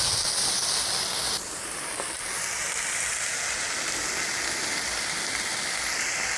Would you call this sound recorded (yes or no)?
yes